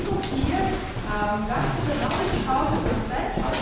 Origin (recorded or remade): recorded